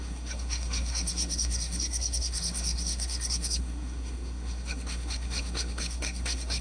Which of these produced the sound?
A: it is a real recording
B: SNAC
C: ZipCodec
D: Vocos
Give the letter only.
B